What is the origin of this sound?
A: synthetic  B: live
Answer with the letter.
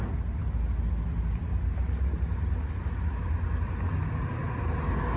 B